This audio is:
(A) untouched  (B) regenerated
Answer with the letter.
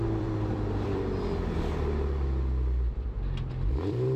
B